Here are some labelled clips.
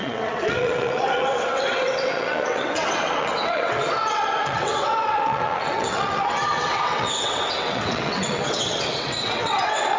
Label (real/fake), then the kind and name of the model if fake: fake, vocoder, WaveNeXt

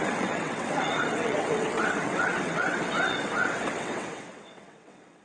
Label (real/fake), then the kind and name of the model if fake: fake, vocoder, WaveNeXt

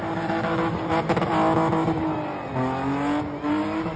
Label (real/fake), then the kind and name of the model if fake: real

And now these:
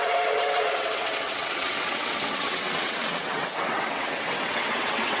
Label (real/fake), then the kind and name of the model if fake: fake, vocoder, WaveNeXt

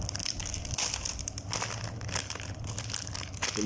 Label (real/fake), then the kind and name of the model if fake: real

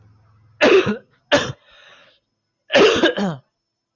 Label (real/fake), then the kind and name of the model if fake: real